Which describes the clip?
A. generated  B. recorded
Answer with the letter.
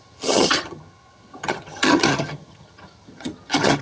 A